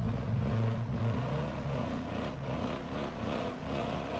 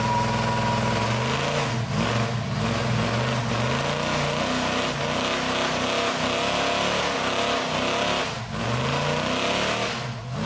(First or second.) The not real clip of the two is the first